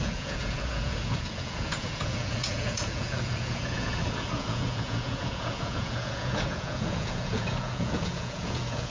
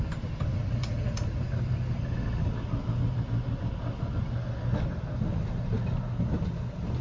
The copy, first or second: first